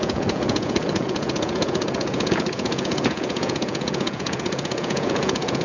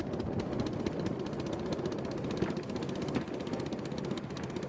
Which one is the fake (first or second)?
first